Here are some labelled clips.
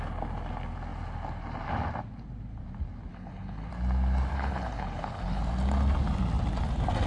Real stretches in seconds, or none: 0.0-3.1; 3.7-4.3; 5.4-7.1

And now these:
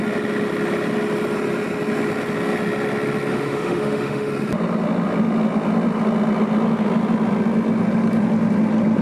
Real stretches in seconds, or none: 0.0-3.3; 4.3-9.0

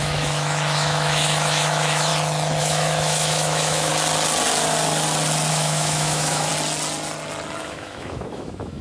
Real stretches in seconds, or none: 2.1-2.6; 3.9-5.5; 6.5-7.6

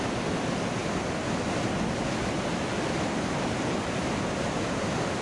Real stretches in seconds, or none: 0.0-5.2

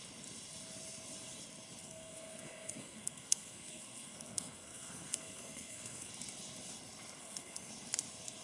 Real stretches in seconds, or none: 0.0-1.8; 6.1-7.2; 7.7-8.4

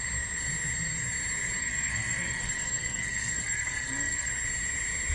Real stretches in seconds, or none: 0.0-1.6; 4.3-5.1